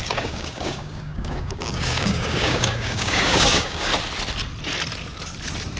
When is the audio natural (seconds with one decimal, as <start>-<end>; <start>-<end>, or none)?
3.9-5.8